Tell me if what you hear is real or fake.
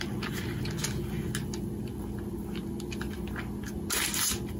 real